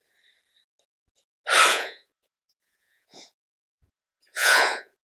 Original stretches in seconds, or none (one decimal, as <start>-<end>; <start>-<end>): 0.0-1.7